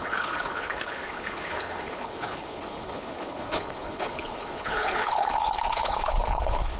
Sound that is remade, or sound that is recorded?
remade